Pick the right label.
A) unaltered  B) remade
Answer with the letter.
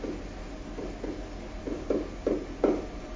A